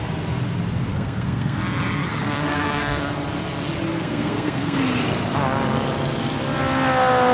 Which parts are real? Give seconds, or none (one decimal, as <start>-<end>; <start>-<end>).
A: 0.0-0.9; 1.6-2.0; 3.1-3.9; 4.8-7.3